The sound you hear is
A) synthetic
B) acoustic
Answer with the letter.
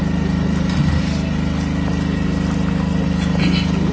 B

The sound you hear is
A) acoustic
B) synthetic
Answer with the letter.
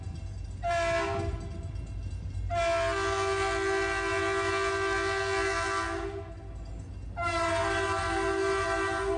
A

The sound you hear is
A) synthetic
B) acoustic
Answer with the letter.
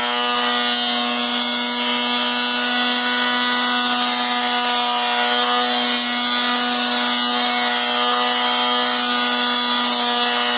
B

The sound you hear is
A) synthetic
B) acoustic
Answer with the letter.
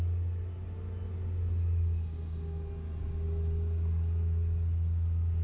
B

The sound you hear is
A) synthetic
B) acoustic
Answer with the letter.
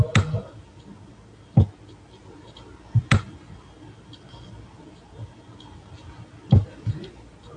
B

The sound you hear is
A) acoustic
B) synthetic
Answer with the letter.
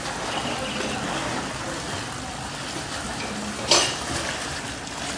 A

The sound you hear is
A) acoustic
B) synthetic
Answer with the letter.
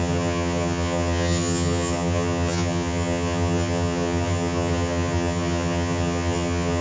B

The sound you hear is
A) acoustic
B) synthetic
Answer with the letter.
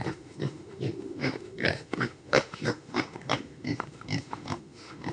B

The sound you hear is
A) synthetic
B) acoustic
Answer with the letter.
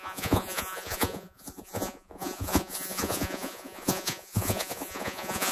A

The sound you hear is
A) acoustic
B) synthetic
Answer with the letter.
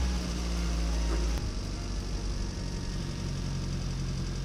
A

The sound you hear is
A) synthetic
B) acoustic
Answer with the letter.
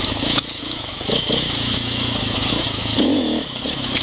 A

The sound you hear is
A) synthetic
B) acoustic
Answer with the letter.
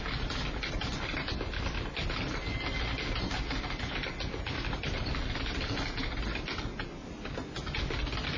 B